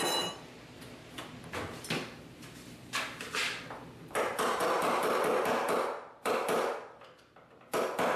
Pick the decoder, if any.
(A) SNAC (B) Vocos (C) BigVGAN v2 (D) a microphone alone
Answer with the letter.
C